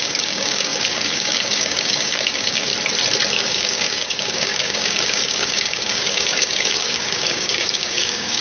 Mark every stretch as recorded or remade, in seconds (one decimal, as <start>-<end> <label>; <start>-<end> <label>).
0.0-2.7 remade; 2.7-3.3 recorded; 3.3-8.4 remade